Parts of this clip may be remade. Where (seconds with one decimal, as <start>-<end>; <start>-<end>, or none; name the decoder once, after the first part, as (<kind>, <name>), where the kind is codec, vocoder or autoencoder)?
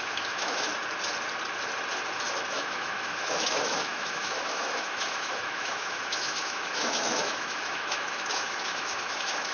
0.0-0.7 (autoencoder, DAC-VAE); 2.5-9.5